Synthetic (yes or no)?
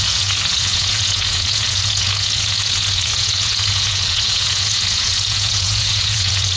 yes